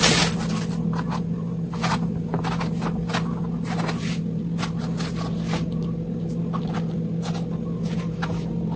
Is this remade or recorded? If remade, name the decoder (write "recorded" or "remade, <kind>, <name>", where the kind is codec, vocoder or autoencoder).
recorded